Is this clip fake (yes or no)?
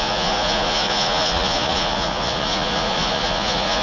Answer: yes